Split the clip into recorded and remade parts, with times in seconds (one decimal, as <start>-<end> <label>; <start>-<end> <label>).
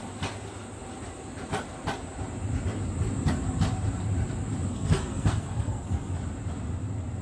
0.0-4.7 recorded; 4.7-6.1 remade; 6.1-7.2 recorded